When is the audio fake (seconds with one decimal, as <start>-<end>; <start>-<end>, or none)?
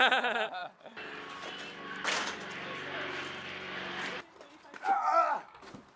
none